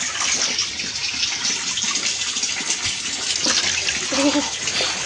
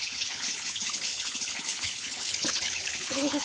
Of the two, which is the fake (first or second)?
second